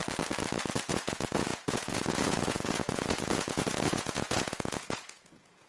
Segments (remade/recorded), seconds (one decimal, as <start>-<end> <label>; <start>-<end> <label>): 0.0-0.9 recorded; 0.9-5.7 remade